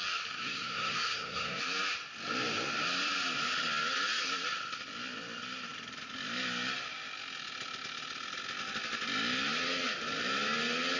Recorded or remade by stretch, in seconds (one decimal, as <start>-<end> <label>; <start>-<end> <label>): 0.0-0.4 recorded; 0.4-1.6 remade; 1.6-11.0 recorded